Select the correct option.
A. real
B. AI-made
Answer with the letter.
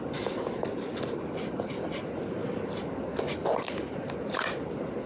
A